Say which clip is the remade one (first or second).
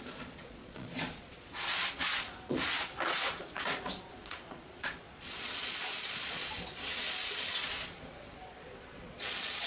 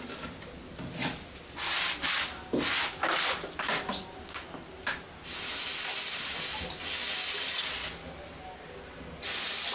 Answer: first